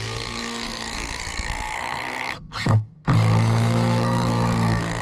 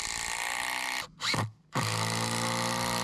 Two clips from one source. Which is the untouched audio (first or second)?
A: second